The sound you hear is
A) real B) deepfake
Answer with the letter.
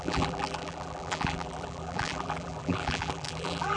B